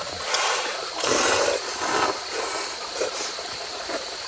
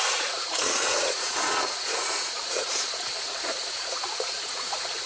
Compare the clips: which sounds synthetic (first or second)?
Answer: second